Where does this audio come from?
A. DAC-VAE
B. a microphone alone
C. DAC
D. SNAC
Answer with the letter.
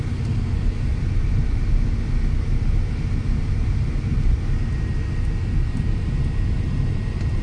B